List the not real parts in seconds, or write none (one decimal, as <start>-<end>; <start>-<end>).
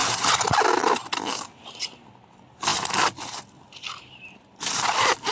none